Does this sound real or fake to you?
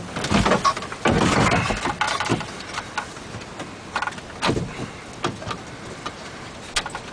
real